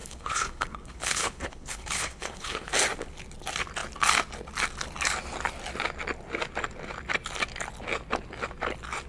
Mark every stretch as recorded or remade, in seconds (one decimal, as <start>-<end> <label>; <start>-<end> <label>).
0.0-2.7 remade; 2.7-9.1 recorded